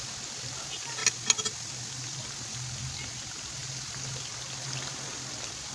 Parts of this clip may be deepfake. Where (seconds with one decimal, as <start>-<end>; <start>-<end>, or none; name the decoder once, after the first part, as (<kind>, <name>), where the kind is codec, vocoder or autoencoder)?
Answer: none